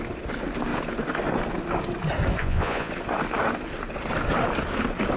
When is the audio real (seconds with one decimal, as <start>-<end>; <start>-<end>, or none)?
0.0-2.4; 2.9-5.2